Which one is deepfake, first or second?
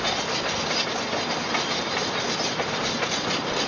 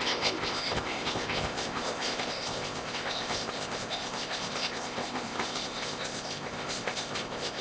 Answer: second